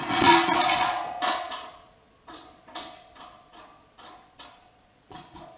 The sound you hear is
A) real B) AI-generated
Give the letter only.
B